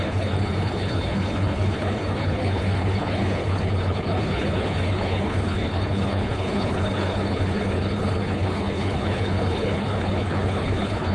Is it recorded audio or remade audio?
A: remade